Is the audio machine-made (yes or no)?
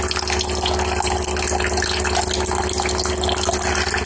no